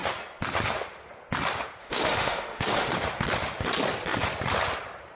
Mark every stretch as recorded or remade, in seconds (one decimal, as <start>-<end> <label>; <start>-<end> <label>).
0.0-1.8 recorded; 1.8-2.9 remade; 2.9-5.2 recorded